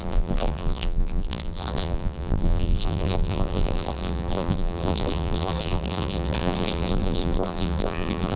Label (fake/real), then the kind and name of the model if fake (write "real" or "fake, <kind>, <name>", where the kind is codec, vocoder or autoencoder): fake, vocoder, BigVGAN v2